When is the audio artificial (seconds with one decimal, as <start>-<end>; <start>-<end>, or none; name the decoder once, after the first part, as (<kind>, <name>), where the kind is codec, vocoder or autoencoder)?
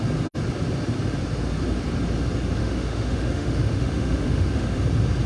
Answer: 2.6-4.8 (autoencoder, DAC-VAE)